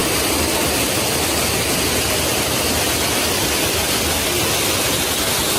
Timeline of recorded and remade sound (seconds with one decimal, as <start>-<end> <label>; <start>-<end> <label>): 0.0-5.6 recorded